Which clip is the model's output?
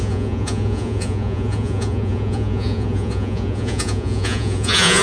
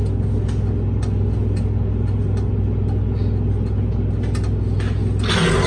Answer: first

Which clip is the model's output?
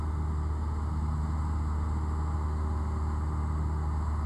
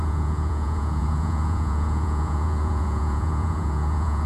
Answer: second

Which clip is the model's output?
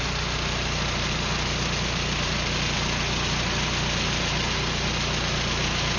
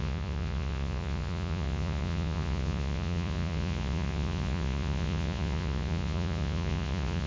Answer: second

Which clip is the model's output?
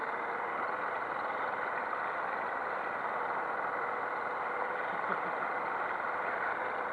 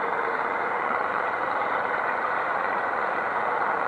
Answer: second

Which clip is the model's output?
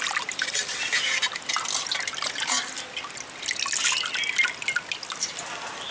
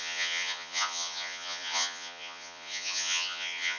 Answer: second